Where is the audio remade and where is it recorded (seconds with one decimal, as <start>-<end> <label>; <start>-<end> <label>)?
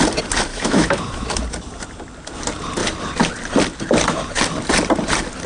0.0-0.5 recorded; 0.5-1.4 remade; 1.4-5.5 recorded